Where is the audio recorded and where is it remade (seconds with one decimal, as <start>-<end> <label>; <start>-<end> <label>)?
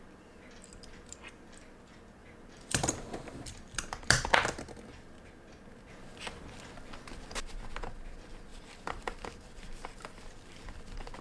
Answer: 0.0-2.2 recorded; 2.2-4.0 remade; 4.0-8.5 recorded; 8.5-10.0 remade; 10.0-11.2 recorded